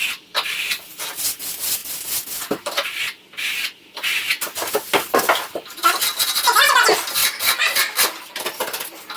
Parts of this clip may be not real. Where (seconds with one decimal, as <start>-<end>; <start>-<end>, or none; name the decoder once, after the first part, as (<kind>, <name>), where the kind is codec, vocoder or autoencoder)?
none